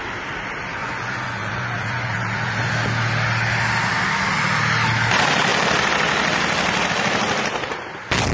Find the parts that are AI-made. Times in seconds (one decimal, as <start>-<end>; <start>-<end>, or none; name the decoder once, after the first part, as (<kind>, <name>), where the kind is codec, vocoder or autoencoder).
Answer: 0.8-2.7 (vocoder, Vocos)